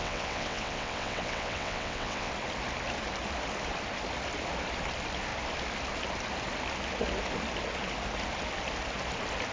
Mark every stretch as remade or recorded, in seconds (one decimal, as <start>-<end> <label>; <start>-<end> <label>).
0.0-2.3 remade; 2.3-9.5 recorded